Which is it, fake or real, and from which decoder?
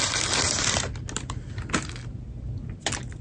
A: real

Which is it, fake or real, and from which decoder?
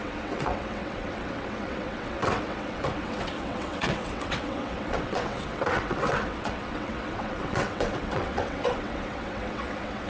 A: fake, vocoder, WaveNeXt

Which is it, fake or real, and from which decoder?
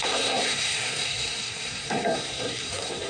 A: fake, codec, SNAC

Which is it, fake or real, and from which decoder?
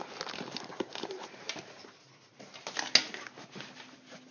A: real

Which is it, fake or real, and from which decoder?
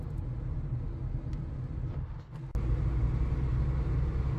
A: real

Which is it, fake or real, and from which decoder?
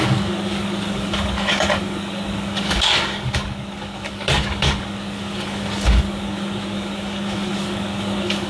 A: fake, codec, DAC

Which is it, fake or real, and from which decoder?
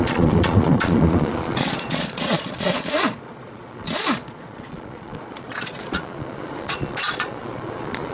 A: fake, vocoder, Vocos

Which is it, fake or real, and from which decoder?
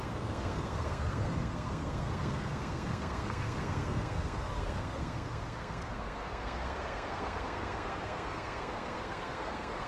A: fake, codec, SNAC